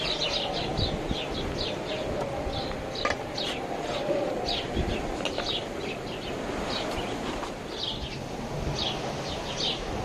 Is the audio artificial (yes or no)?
no